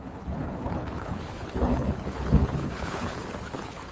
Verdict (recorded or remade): remade